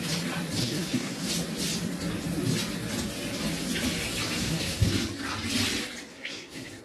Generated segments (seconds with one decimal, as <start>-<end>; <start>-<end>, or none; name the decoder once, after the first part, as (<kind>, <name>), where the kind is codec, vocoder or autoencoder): 0.6-1.3 (codec, SNAC); 4.4-5.0; 6.1-6.8